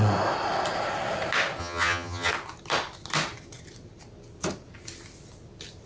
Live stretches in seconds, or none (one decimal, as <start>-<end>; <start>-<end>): 0.0-1.6; 2.3-5.9